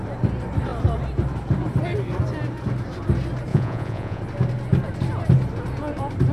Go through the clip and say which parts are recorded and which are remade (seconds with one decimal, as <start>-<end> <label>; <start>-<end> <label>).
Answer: 0.0-3.5 recorded; 3.5-4.2 remade; 4.2-6.3 recorded